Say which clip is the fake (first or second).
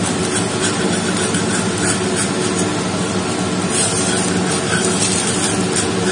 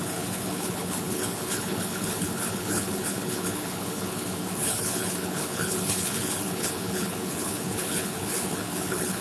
second